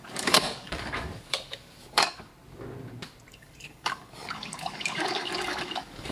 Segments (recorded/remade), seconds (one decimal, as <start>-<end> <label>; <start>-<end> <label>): 0.0-2.3 remade; 2.3-3.3 recorded; 3.3-6.1 remade